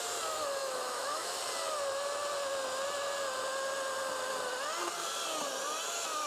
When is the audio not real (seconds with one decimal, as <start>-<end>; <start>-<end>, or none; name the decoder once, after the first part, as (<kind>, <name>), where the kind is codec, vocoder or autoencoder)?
0.6-1.4 (autoencoder, DAC-VAE)